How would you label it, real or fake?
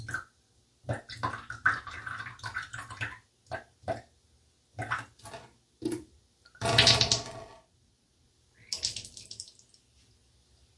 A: real